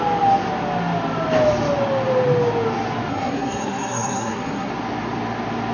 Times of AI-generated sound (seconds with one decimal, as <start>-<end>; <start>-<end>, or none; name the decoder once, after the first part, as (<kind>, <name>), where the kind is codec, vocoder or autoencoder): 3.1-4.7 (codec, SNAC)